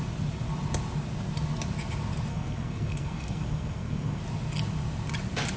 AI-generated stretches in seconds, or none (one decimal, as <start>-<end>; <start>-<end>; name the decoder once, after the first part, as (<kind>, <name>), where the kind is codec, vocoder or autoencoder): 2.3-4.2 (codec, SNAC)